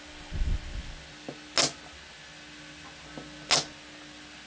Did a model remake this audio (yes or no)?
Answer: no